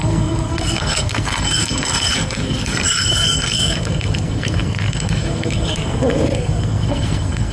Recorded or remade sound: remade